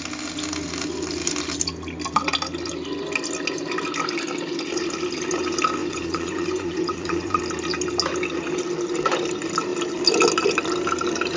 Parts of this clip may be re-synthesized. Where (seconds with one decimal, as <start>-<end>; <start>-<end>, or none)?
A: 5.8-7.4